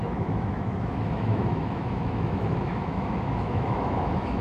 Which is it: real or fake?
fake